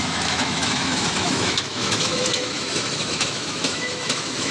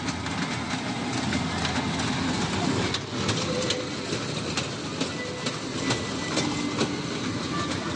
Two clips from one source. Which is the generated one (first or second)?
first